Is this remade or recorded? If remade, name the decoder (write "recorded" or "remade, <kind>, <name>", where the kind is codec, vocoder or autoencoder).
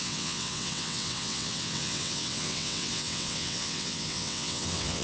remade, vocoder, WaveNeXt